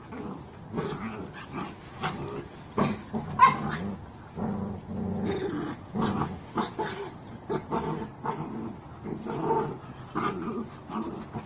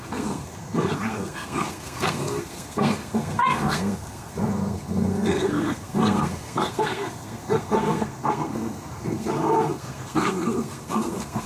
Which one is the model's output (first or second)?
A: second